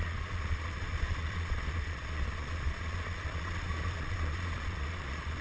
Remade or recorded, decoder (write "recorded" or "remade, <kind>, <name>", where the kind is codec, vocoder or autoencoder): remade, vocoder, Vocos